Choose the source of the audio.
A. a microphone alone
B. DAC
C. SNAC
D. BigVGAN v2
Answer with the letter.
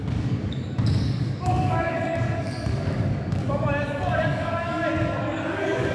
B